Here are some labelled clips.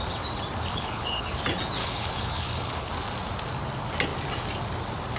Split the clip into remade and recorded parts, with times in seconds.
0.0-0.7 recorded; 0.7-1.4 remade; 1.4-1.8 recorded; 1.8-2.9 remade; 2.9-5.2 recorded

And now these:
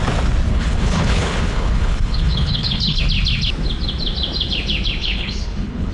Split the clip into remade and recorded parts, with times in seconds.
0.0-0.5 recorded; 0.5-3.0 remade; 3.0-5.0 recorded; 5.0-5.9 remade